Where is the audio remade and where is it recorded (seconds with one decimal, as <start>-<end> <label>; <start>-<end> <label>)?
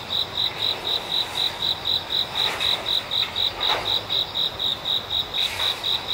0.0-6.1 recorded